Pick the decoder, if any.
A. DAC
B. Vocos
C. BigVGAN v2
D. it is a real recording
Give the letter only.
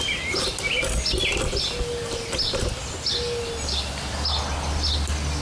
D